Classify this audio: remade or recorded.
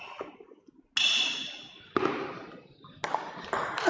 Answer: recorded